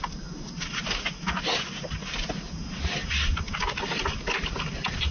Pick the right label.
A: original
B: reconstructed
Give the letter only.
A